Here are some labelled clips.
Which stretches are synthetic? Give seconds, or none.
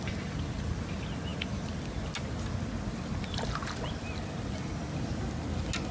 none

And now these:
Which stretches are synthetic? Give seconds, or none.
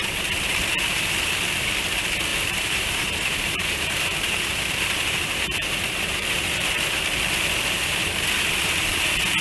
2.3-7.0 (vocoder, BigVGAN v2)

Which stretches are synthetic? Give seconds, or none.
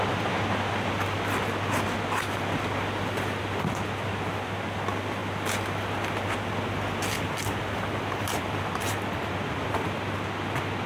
none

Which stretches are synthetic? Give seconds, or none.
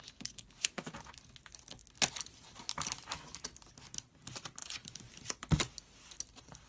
4.6-5.6 (vocoder, BigVGAN v2)